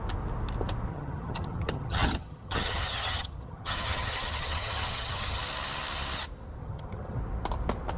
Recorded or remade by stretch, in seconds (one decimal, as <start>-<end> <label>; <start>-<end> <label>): 0.0-0.9 recorded; 0.9-5.4 remade; 5.4-6.6 recorded; 6.6-7.2 remade; 7.2-8.0 recorded

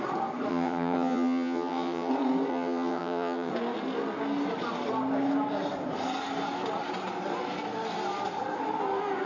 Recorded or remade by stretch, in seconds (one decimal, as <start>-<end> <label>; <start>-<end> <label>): 0.0-0.5 recorded; 0.5-2.1 remade; 2.1-2.5 recorded; 2.5-3.5 remade; 3.5-9.3 recorded

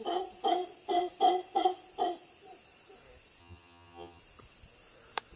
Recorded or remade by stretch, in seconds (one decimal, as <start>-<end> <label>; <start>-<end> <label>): 0.0-3.4 recorded; 3.4-4.2 remade; 4.2-5.4 recorded

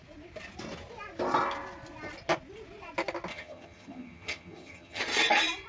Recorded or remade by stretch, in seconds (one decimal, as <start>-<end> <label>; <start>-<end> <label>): 0.0-3.3 recorded; 3.3-5.0 remade; 5.0-5.7 recorded